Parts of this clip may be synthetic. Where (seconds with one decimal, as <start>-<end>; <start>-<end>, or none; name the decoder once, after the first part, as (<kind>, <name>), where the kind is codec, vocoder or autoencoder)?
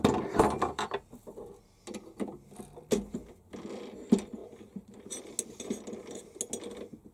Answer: none